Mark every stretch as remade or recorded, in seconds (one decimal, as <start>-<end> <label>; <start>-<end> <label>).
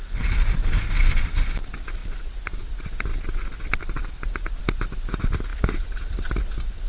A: 0.0-6.9 recorded